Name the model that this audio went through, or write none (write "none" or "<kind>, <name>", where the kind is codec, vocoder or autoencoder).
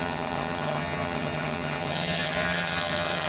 vocoder, HiFi-GAN